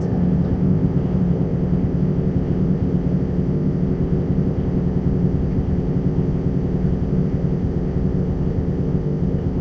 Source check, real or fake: fake